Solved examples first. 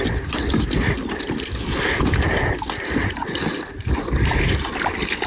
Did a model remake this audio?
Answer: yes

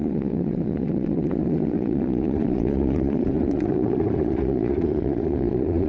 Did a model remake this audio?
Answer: yes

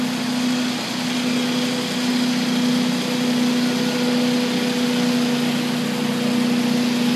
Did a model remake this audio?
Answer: no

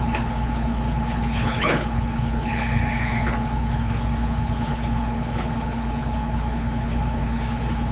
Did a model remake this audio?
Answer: yes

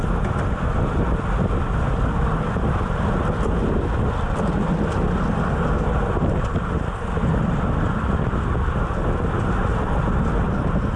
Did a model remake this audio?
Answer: no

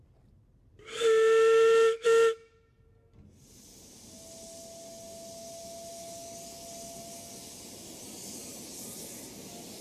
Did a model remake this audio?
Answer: no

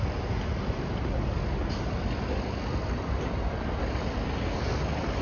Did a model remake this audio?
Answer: no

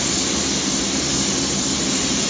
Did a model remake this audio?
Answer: no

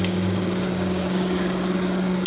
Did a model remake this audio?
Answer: yes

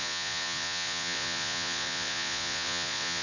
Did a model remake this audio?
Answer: yes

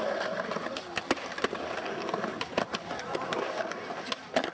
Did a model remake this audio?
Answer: no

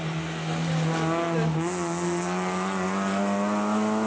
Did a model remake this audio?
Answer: no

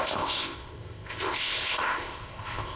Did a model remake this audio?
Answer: yes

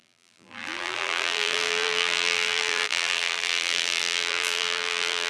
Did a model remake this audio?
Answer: yes